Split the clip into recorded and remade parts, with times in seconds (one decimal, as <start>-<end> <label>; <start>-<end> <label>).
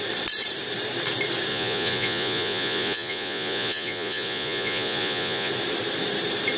0.0-1.5 recorded; 1.5-5.5 remade; 5.5-6.6 recorded